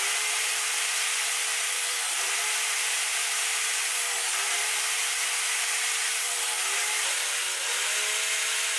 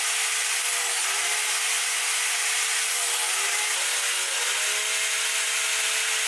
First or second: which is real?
second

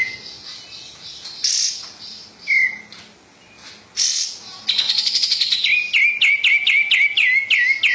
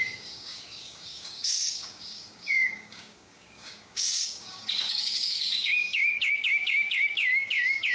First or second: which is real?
first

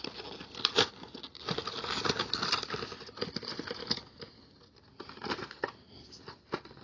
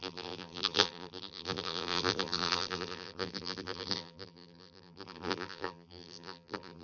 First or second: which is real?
first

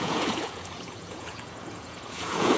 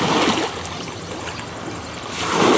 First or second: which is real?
second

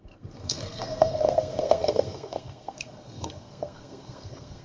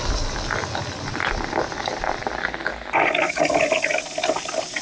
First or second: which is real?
second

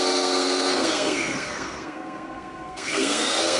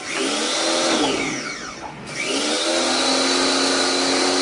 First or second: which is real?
second